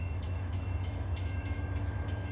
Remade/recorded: remade